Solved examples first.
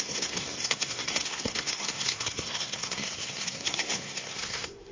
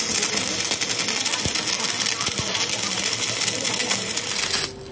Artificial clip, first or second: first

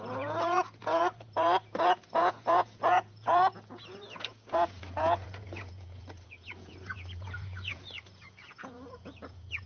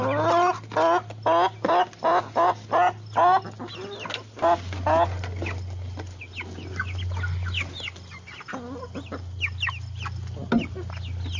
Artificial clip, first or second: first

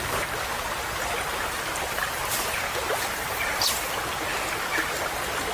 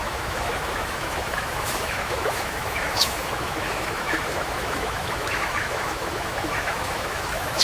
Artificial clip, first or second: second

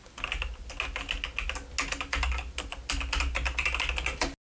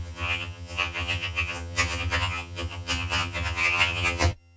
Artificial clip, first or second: second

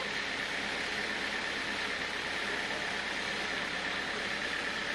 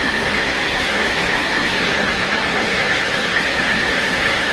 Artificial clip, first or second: second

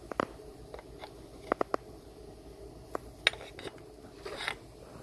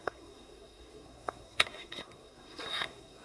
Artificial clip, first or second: second